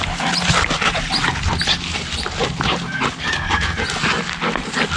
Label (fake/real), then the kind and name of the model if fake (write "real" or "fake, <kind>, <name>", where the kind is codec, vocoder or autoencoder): real